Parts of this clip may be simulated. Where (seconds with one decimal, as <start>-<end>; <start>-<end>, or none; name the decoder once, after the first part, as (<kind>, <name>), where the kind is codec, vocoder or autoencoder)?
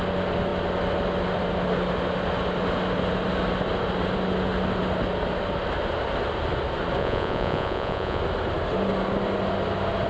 7.0-8.2 (vocoder, Vocos)